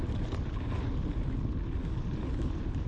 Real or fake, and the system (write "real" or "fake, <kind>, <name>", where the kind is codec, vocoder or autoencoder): real